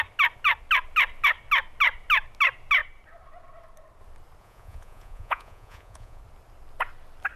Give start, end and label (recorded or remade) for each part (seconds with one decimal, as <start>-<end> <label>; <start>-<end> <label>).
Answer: 0.0-4.4 recorded; 4.4-6.2 remade; 6.2-7.4 recorded